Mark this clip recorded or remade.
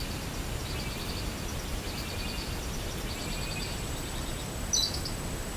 recorded